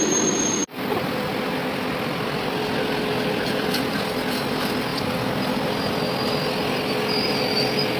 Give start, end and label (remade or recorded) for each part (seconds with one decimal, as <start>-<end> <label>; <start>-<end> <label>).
0.0-8.0 recorded

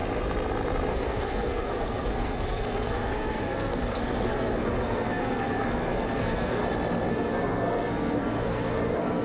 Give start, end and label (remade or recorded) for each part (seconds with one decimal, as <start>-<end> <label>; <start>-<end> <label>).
0.0-0.9 recorded; 0.9-6.6 remade; 6.6-7.1 recorded; 7.1-9.2 remade

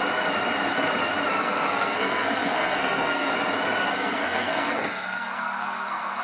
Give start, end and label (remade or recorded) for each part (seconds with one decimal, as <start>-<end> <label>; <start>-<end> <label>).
0.0-1.4 recorded; 1.4-3.3 remade; 3.3-3.8 recorded; 3.8-6.2 remade

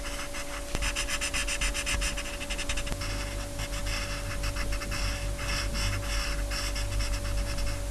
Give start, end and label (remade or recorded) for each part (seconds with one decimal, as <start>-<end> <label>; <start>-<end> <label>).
0.0-7.9 recorded

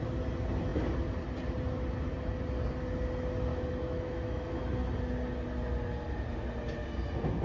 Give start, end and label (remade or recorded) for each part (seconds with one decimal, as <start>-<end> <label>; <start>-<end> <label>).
0.0-3.5 recorded; 3.5-4.6 remade; 4.6-7.4 recorded

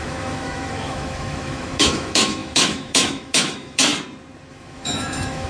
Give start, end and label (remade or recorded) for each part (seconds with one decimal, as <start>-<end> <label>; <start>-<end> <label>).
0.0-3.9 remade; 3.9-4.5 recorded; 4.5-5.5 remade

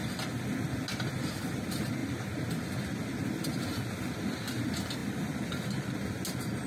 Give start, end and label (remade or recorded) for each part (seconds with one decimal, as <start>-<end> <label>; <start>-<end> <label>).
0.0-5.0 recorded; 5.0-5.9 remade; 5.9-6.7 recorded